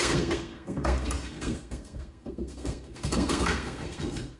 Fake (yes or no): yes